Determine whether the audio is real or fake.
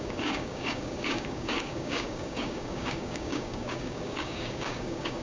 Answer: fake